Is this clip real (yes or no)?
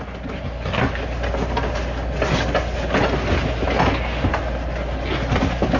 yes